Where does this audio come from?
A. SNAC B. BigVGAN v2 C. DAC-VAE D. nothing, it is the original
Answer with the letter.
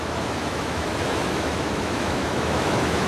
C